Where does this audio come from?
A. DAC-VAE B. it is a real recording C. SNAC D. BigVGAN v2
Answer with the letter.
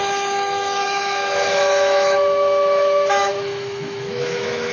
A